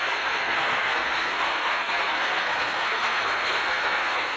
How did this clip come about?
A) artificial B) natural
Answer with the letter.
A